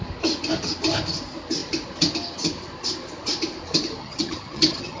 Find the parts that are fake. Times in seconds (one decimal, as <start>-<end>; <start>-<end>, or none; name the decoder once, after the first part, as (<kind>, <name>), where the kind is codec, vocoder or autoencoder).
4.0-5.0 (vocoder, HiFi-GAN)